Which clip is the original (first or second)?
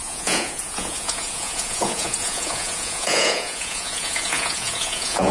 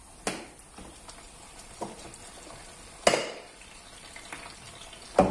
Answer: second